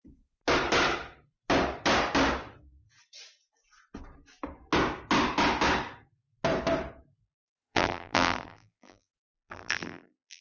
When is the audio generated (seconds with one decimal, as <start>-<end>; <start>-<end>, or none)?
7.2-10.4